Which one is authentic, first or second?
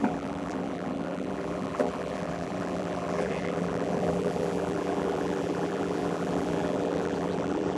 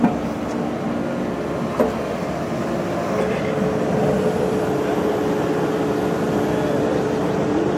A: second